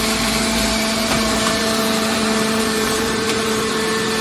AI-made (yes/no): yes